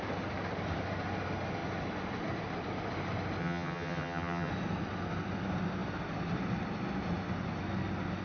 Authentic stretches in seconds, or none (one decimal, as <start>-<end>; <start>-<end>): 0.0-3.4; 4.5-8.2